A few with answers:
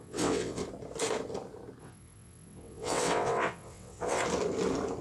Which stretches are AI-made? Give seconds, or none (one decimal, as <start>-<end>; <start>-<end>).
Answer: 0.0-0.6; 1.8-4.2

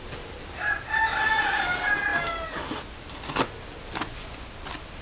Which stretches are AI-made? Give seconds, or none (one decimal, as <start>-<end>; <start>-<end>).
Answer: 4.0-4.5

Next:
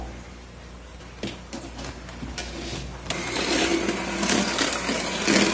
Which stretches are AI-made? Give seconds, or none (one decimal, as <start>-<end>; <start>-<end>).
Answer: none